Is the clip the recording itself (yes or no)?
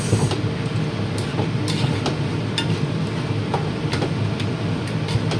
yes